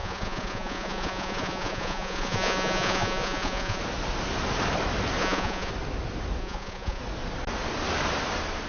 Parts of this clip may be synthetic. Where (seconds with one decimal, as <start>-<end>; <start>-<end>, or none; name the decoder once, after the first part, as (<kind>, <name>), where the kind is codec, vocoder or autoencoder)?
0.0-3.8 (vocoder, Vocos); 5.2-5.7; 6.4-7.0